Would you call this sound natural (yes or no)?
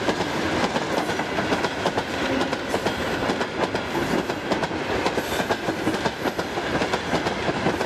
yes